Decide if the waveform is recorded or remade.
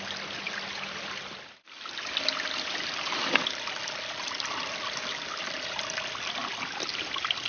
recorded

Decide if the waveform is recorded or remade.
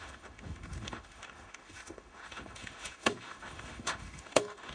remade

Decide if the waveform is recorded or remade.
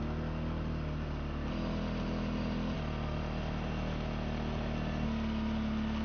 recorded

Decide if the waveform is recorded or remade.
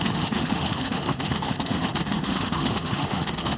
remade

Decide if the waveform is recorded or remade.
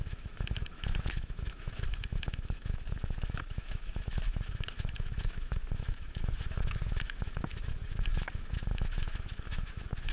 remade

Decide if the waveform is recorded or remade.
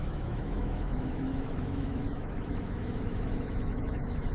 remade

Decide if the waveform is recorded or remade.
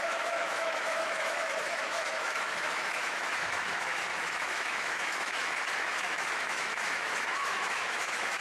remade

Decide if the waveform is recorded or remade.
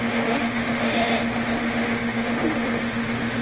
remade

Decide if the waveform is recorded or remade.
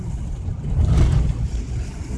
recorded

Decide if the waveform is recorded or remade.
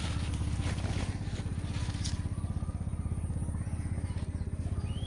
recorded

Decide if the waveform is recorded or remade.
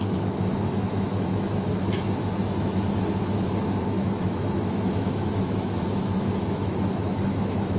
remade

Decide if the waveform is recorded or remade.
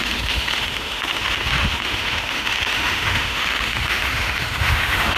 remade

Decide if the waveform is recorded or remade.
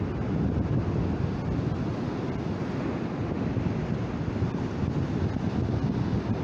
recorded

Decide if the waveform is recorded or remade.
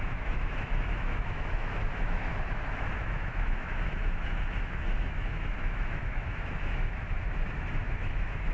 remade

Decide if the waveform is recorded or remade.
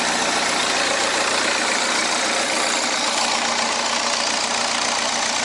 recorded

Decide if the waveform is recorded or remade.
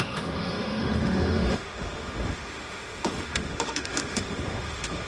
remade